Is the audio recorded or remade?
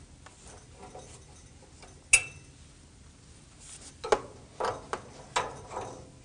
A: recorded